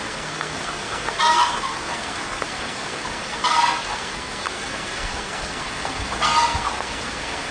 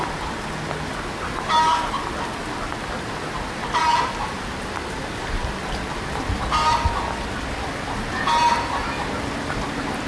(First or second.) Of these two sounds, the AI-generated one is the first